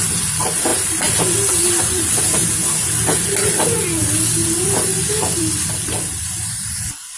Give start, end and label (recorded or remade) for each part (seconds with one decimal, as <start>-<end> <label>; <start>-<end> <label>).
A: 0.0-0.7 recorded; 0.7-1.2 remade; 1.2-4.4 recorded; 4.4-5.4 remade; 5.4-7.2 recorded